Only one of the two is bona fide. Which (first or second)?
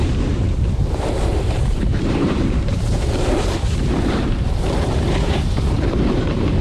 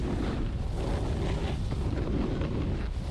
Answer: second